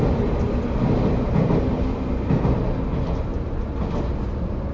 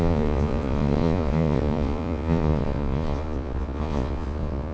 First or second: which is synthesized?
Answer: second